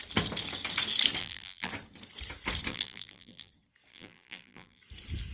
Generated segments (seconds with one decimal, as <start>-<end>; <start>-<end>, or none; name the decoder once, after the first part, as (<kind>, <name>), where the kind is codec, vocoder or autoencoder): 1.2-1.7 (vocoder, BigVGAN v2); 2.7-3.5; 3.9-4.8